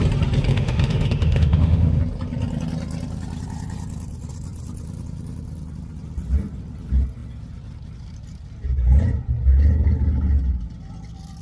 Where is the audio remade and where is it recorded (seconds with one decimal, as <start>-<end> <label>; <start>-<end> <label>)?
0.0-0.5 recorded; 0.5-2.0 remade; 2.0-11.4 recorded